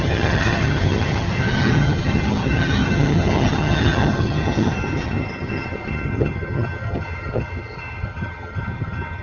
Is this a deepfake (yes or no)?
yes